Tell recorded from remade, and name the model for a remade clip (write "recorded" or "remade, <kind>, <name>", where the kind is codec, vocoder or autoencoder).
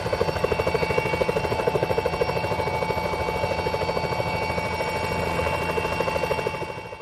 recorded